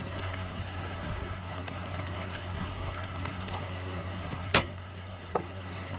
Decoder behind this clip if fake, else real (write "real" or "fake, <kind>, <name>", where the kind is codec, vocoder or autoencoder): fake, codec, SNAC